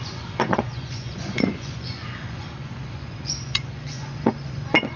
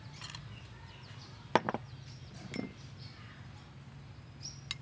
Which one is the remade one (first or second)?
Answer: first